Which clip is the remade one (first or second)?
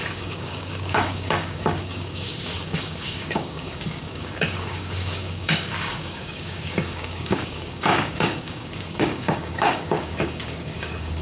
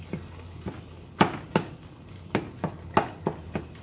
first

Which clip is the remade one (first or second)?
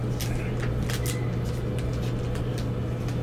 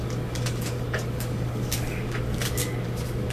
second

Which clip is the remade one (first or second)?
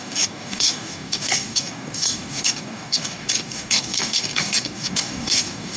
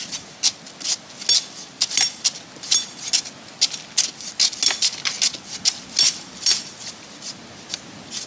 first